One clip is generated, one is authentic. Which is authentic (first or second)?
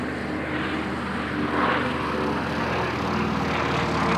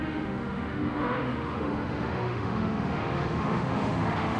first